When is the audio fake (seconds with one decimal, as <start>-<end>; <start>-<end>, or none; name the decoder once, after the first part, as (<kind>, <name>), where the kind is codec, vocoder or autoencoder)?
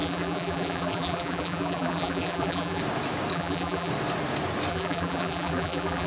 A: 0.0-2.8 (vocoder, BigVGAN v2); 3.3-3.9; 4.7-6.1